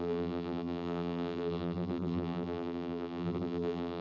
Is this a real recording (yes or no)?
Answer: no